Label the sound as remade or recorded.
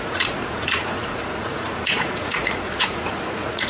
remade